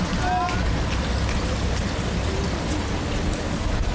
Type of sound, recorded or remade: recorded